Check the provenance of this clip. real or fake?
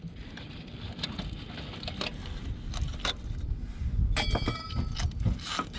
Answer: real